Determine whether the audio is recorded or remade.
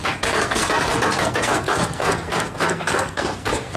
remade